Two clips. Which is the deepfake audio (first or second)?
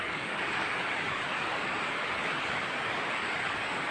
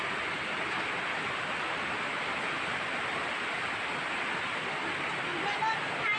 first